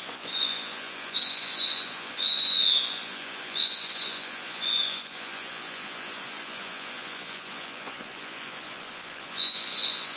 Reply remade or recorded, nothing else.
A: remade